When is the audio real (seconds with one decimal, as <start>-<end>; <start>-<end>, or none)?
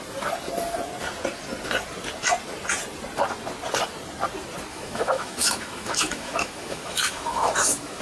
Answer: 0.0-4.7